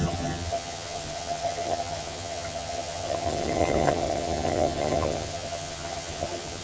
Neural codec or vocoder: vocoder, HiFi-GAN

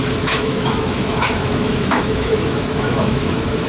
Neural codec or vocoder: autoencoder, DAC-VAE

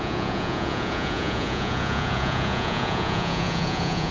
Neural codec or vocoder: vocoder, Vocos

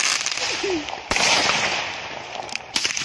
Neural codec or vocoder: none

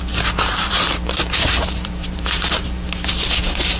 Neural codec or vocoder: vocoder, BigVGAN v2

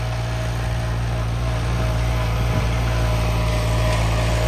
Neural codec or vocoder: none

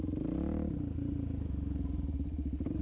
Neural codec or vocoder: none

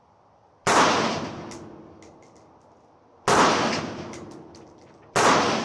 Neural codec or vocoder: none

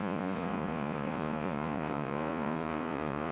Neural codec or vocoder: vocoder, Vocos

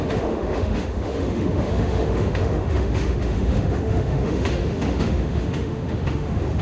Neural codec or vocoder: autoencoder, DAC-VAE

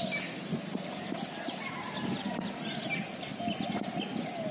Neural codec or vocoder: none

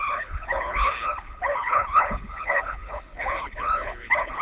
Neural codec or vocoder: codec, HILCodec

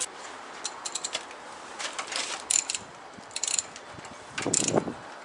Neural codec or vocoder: vocoder, BigVGAN v2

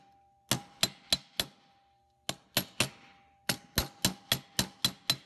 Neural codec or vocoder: none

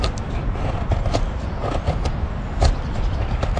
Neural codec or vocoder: none